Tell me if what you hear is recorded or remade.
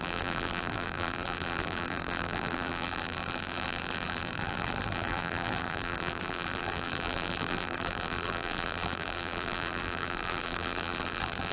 remade